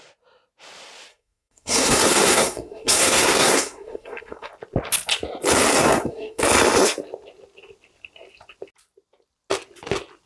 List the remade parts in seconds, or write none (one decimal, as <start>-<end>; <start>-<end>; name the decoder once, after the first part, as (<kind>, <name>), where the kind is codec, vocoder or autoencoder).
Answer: 1.1-4.5 (codec, SNAC); 5.8-6.4